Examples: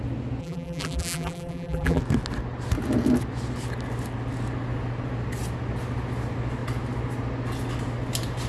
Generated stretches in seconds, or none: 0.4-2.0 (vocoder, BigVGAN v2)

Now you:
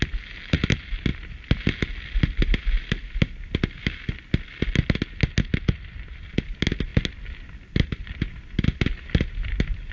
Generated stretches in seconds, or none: none

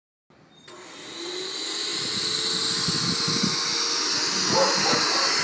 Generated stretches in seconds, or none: none

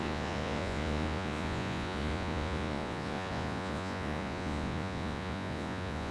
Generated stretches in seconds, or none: 0.0-6.1 (vocoder, Vocos)

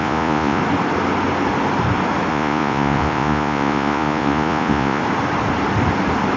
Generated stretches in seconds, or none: 0.0-0.6 (vocoder, Vocos); 2.3-5.0

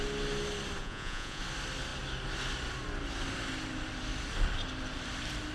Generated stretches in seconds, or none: 0.8-1.4 (vocoder, Vocos)